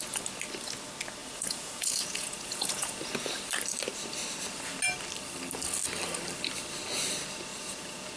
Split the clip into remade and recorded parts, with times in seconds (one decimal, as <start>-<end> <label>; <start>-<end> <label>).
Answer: 0.0-1.2 recorded; 1.2-3.3 remade; 3.3-7.5 recorded; 7.5-8.2 remade